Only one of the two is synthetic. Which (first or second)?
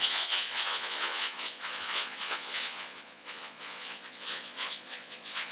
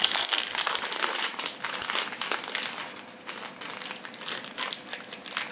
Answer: first